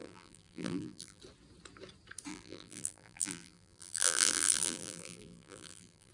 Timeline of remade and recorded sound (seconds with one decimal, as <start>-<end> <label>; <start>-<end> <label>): 0.0-1.2 remade; 1.2-2.3 recorded; 2.3-6.1 remade